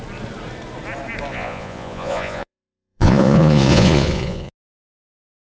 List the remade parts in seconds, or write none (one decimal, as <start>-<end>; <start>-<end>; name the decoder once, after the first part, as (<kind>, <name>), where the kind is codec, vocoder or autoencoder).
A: 1.3-4.5 (vocoder, Vocos)